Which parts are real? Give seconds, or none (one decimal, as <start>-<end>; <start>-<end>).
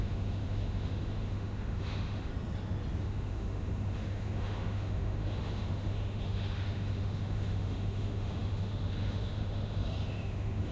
2.3-3.0